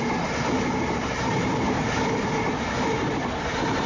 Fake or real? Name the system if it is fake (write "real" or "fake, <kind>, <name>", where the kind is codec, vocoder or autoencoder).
real